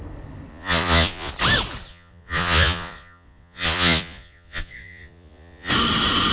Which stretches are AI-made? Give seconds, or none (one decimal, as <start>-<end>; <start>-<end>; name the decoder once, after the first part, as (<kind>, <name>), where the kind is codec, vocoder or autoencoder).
0.5-1.3 (vocoder, Vocos); 1.9-5.7